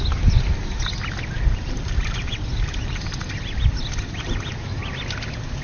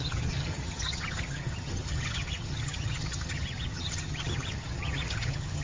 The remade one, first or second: second